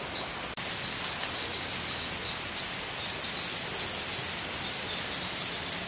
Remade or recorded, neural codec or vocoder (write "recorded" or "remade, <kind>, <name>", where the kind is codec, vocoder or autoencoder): recorded